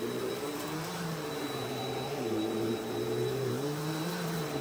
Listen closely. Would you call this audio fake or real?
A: fake